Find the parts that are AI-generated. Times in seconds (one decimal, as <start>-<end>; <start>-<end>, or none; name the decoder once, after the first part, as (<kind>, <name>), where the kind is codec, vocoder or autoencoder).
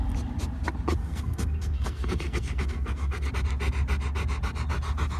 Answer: 1.0-3.3 (codec, SNAC)